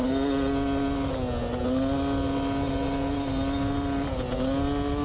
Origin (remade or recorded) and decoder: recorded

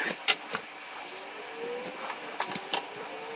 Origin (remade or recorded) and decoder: recorded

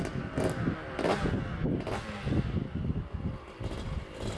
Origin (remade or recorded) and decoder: recorded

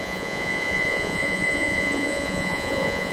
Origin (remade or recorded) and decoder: remade, vocoder, Vocos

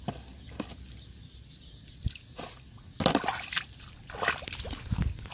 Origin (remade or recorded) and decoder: recorded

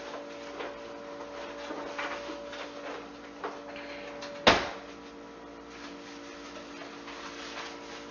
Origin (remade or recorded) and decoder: recorded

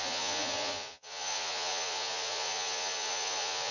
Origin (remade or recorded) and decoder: remade, vocoder, Vocos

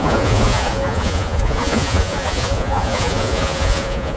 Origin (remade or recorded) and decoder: remade, vocoder, Vocos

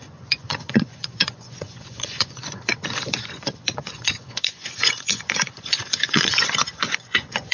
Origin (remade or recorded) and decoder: remade, vocoder, Vocos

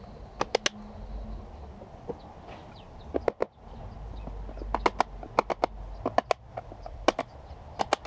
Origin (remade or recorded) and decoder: recorded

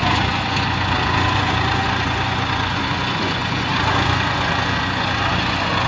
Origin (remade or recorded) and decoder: remade, vocoder, Vocos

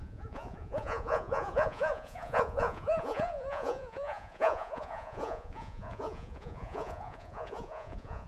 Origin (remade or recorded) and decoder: remade, vocoder, Vocos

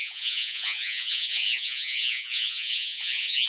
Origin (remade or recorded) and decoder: remade, vocoder, Vocos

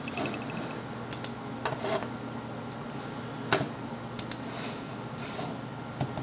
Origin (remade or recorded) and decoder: recorded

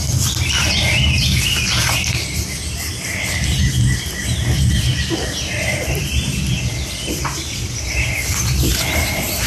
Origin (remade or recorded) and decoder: recorded